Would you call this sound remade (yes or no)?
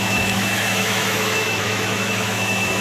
yes